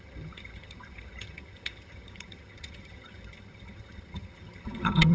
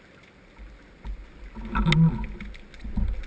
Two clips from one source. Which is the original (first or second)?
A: second